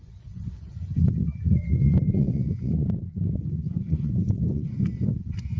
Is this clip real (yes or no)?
no